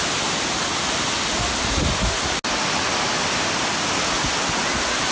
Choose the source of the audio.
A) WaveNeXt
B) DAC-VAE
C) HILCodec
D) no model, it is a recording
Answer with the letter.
D